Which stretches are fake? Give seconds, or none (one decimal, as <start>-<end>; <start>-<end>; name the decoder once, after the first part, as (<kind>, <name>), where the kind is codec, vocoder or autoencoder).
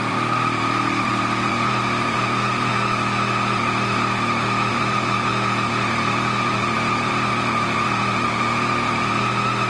0.0-2.7 (vocoder, BigVGAN v2); 4.7-5.3; 5.9-9.7